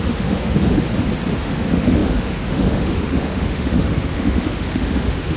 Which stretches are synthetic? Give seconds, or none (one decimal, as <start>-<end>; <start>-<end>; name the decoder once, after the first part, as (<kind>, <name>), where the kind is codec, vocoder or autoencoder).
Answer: 0.0-0.9 (autoencoder, DAC-VAE); 1.4-5.4